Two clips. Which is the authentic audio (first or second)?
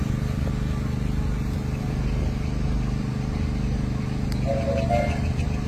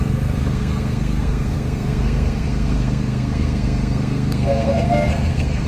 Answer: first